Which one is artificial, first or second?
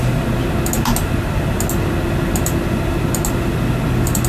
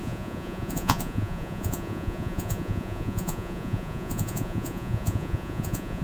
second